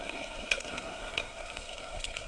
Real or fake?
fake